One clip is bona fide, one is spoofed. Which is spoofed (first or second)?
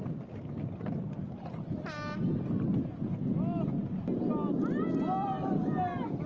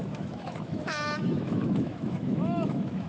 second